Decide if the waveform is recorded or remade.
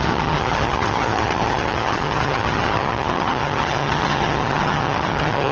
remade